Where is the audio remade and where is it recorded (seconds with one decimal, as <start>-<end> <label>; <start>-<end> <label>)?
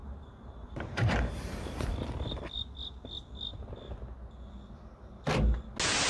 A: 0.0-1.5 remade; 1.5-6.1 recorded